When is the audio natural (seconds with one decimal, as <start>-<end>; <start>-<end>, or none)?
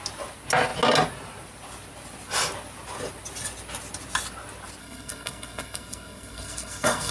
0.0-4.8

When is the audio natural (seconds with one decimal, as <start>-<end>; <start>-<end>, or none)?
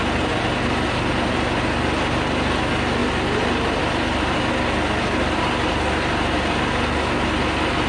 0.0-7.9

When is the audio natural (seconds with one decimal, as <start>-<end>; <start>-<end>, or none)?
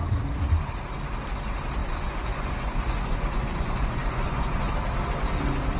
0.0-1.8; 4.6-5.8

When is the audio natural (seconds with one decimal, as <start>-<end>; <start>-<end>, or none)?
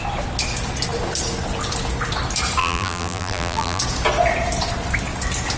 0.0-2.6; 3.8-5.6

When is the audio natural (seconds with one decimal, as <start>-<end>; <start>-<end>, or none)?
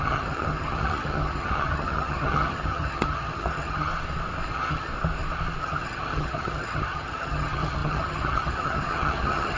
3.9-4.5; 4.9-5.6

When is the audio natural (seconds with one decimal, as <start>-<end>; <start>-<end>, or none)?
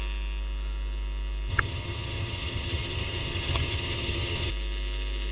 0.0-1.5; 4.5-5.3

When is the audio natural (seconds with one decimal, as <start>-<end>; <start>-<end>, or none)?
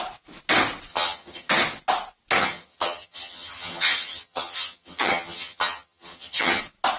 0.0-0.9; 1.5-2.4; 6.6-7.0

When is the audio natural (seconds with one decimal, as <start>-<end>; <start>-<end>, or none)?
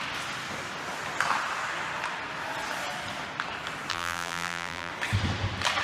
0.0-3.9; 4.9-5.8